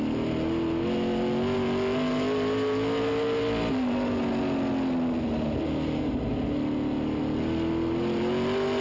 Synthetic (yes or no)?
no